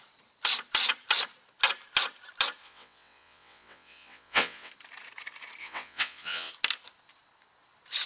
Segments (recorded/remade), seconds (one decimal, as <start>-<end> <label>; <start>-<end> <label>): 0.0-2.6 recorded; 2.6-4.7 remade; 4.7-5.6 recorded; 5.6-6.5 remade; 6.5-8.1 recorded